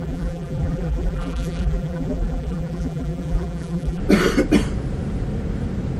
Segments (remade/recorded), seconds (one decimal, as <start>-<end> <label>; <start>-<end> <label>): 0.0-4.0 remade; 4.0-6.0 recorded